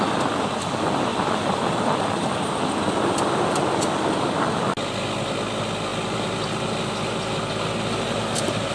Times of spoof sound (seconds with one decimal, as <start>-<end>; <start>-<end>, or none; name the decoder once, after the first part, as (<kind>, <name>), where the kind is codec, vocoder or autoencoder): none